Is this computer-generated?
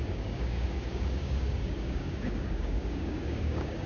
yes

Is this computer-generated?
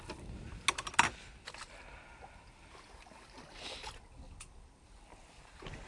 no